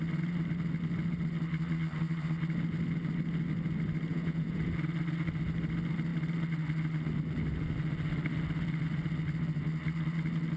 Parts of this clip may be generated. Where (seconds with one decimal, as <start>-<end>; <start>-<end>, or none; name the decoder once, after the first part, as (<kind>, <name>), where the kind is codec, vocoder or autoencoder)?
4.1-4.6 (vocoder, Vocos)